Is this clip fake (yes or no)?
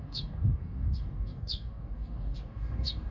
yes